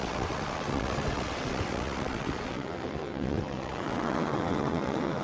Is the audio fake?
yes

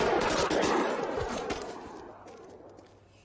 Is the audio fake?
no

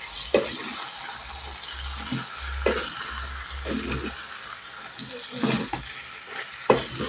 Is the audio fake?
no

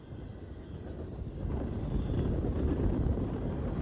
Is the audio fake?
no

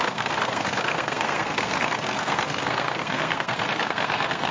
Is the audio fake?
yes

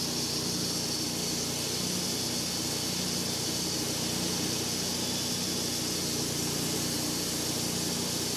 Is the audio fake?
no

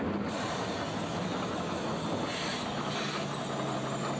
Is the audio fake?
no